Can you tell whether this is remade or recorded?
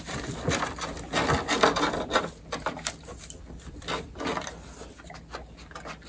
recorded